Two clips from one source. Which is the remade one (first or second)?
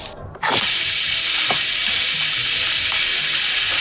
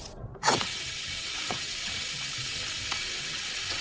second